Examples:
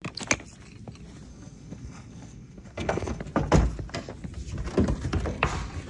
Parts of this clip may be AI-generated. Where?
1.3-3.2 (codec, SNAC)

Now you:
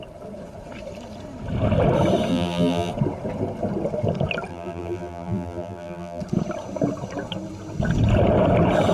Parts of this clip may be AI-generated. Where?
2.3-2.9 (vocoder, BigVGAN v2); 4.5-6.2